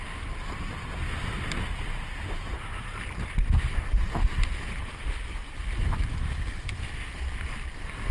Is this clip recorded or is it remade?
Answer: recorded